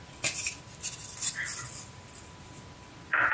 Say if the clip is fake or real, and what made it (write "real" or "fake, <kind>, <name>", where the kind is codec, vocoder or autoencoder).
real